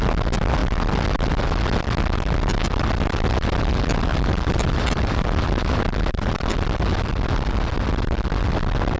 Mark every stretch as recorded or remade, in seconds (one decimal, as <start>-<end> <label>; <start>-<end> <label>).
0.0-4.1 recorded; 4.1-6.5 remade; 6.5-9.0 recorded